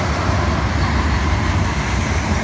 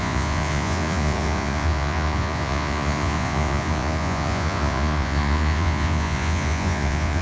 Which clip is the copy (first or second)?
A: second